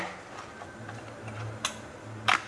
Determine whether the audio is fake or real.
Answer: real